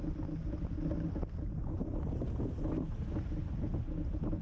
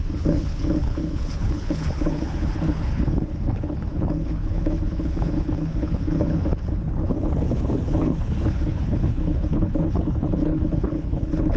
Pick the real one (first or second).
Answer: first